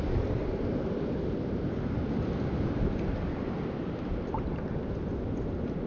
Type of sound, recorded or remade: recorded